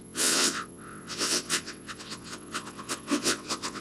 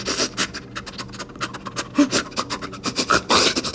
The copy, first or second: first